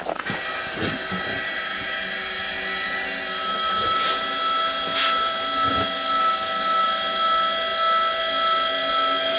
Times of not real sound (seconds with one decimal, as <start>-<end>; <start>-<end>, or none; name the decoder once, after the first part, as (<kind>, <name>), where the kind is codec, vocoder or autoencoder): none